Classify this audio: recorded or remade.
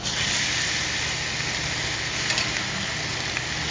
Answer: recorded